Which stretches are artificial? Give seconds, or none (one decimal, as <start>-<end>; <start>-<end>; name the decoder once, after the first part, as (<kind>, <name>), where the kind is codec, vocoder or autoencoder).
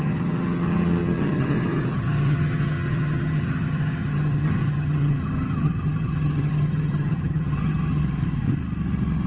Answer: 0.0-8.0 (vocoder, HiFi-GAN)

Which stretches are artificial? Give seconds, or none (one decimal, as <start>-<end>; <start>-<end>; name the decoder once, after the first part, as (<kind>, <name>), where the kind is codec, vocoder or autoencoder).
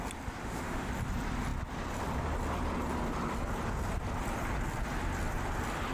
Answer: 0.4-0.9 (autoencoder, DAC-VAE)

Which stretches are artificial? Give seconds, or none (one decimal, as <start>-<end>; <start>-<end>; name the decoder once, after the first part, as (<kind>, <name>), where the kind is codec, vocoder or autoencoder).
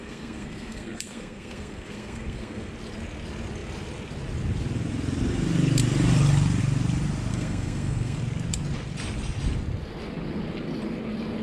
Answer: 0.0-2.7 (codec, SNAC); 7.3-8.2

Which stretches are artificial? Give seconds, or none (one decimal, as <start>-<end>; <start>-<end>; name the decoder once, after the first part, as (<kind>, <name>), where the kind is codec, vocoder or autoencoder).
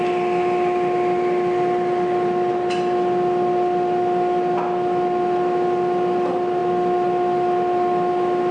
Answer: none